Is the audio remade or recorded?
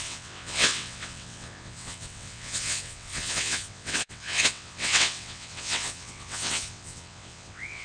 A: remade